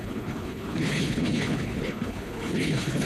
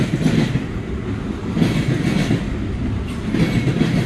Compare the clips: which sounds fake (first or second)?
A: first